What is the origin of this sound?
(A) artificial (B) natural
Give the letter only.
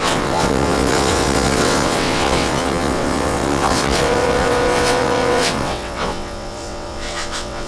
A